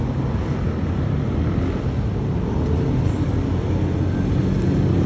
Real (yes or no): yes